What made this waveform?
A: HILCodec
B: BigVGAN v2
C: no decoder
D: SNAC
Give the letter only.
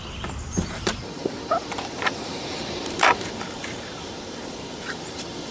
B